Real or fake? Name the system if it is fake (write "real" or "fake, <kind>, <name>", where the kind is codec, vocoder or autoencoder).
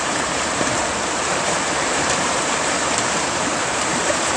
fake, vocoder, BigVGAN v2